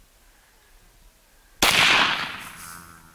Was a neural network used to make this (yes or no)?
no